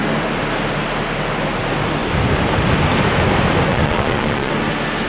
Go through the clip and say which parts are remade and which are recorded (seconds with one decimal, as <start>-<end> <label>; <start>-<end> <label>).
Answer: 0.0-3.7 recorded; 3.7-4.5 remade; 4.5-5.1 recorded